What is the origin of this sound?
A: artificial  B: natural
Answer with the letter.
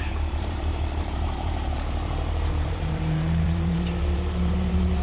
A